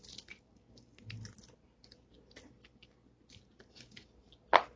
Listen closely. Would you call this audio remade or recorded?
recorded